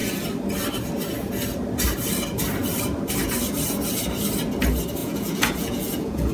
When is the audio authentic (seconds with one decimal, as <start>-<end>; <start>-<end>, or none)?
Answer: 0.0-5.0